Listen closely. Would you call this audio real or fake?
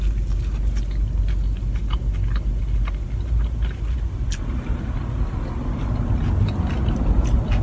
real